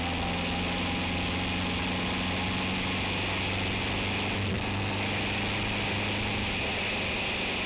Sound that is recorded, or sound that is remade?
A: recorded